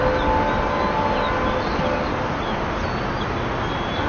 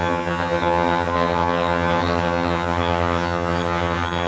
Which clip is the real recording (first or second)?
first